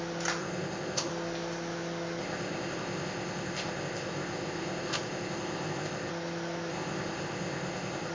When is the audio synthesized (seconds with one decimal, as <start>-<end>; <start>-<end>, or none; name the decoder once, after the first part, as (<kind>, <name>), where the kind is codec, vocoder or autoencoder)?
0.4-1.1 (codec, ZipCodec); 2.2-6.1; 6.7-8.1